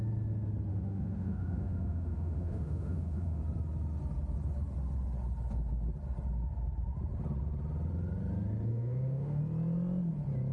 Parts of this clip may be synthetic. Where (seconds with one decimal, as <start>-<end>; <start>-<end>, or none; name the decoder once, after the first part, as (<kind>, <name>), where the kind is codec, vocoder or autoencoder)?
0.7-3.4 (autoencoder, DAC-VAE); 8.7-9.4